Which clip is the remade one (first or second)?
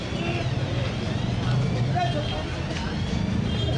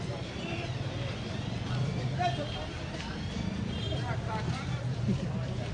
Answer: second